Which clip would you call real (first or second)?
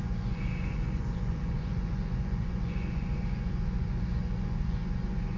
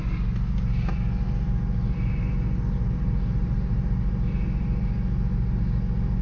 second